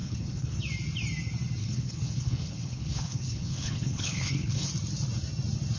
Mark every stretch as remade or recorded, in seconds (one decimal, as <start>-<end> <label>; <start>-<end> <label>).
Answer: 0.0-0.6 remade; 0.6-1.6 recorded; 1.6-4.7 remade; 4.7-5.8 recorded